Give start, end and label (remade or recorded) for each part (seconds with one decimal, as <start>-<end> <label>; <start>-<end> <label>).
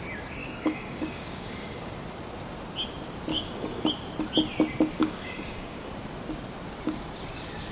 0.0-0.4 recorded; 0.4-1.9 remade; 1.9-3.3 recorded; 3.3-3.9 remade; 3.9-5.0 recorded; 5.0-5.9 remade; 5.9-7.7 recorded